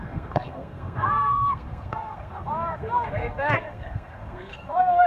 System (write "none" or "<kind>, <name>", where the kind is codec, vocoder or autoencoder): codec, SNAC